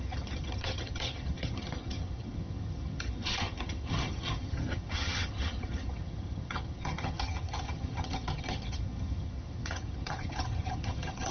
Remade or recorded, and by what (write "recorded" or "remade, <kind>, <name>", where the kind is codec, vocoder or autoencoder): remade, vocoder, HiFi-GAN